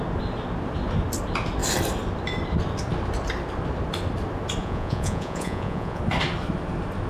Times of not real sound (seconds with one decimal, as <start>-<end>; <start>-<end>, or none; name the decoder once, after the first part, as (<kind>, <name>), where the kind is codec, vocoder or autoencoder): 4.6-6.0 (vocoder, Vocos)